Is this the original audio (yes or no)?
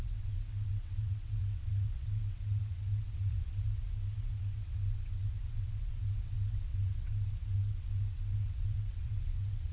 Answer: no